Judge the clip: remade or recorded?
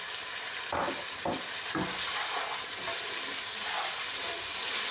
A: recorded